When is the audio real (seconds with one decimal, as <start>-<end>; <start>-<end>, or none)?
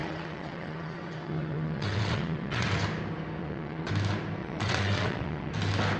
2.8-3.4; 3.9-4.4; 5.5-6.0